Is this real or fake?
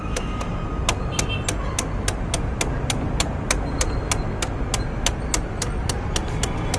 real